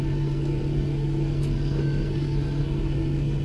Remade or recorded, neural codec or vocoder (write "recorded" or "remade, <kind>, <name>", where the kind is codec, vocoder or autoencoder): remade, codec, SNAC